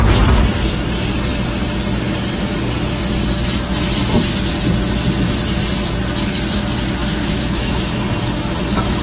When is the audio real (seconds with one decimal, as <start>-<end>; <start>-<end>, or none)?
0.0-7.0; 7.8-9.0